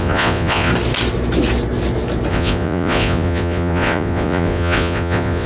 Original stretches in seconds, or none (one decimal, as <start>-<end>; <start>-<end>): 0.7-2.3

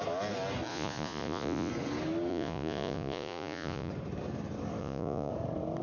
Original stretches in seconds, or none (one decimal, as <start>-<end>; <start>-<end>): 0.0-0.7; 1.7-2.3; 3.9-4.8; 5.3-5.8

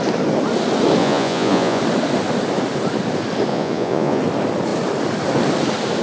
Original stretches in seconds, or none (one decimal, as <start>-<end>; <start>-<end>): 0.0-1.0; 1.8-3.5; 4.2-6.0

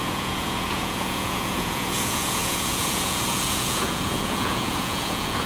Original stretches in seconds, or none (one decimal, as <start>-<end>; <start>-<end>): none

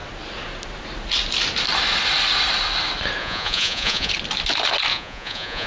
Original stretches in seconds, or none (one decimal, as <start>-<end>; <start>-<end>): 0.0-3.2; 4.1-4.9